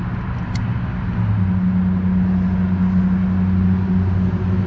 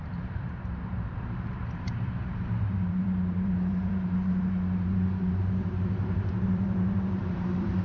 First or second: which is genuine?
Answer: first